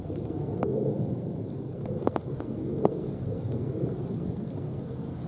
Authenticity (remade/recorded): remade